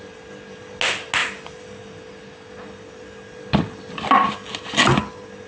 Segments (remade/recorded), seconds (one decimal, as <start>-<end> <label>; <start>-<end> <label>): 0.0-5.5 recorded